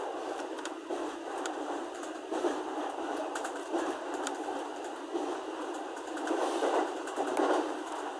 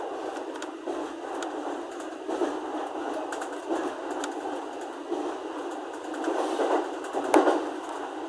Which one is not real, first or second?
first